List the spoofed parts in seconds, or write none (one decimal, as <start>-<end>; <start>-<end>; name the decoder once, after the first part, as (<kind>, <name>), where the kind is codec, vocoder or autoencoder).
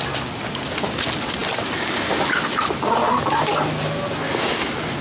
none